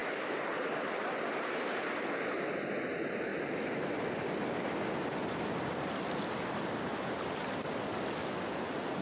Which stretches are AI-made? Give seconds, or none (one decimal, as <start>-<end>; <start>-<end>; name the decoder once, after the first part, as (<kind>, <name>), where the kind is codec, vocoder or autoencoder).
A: none